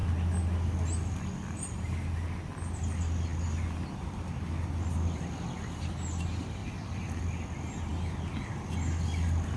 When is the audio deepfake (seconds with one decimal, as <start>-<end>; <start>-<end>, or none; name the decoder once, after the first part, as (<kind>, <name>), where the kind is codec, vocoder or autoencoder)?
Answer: 3.3-5.0 (vocoder, BigVGAN v2); 7.9-9.6

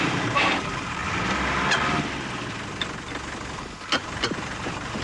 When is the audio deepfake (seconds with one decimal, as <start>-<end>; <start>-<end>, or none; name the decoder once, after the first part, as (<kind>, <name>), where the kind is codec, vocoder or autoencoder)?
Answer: 0.0-1.0 (vocoder, BigVGAN v2); 4.0-5.0

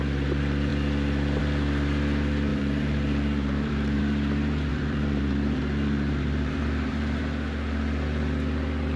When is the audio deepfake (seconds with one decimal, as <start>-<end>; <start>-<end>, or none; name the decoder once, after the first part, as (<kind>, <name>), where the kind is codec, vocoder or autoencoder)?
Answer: 2.5-4.0 (vocoder, BigVGAN v2); 4.7-7.2

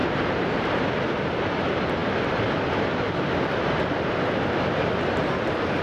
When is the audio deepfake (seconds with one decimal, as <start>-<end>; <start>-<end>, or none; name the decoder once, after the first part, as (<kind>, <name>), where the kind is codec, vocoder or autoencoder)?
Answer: 0.0-0.8 (vocoder, BigVGAN v2)

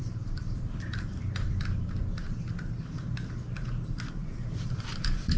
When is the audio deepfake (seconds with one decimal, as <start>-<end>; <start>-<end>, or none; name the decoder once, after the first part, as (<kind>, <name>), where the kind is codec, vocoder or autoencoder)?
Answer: 0.0-2.3 (vocoder, BigVGAN v2); 4.2-5.4

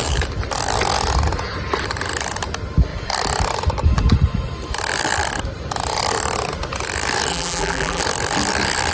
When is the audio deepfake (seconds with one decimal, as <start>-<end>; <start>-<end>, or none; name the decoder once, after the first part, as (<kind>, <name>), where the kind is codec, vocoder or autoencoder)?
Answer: 7.3-8.0 (vocoder, BigVGAN v2)